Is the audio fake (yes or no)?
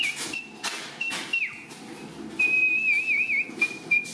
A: no